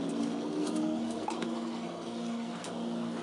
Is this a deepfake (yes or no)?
yes